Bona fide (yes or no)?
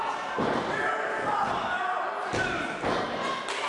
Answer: yes